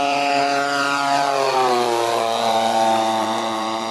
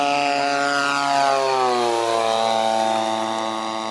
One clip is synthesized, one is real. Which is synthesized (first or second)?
first